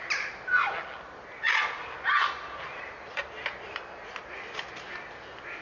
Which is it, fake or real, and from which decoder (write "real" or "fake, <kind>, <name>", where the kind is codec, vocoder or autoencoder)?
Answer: real